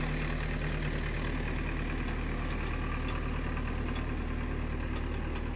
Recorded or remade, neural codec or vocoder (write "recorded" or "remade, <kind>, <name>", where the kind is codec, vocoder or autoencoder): recorded